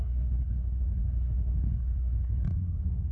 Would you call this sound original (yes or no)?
no